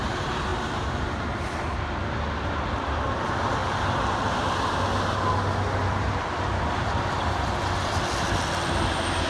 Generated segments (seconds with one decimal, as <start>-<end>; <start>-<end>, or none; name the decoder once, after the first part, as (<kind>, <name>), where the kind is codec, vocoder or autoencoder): none